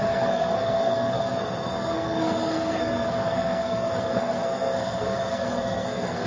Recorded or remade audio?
remade